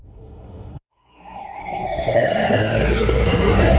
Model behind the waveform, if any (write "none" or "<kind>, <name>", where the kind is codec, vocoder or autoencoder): codec, SNAC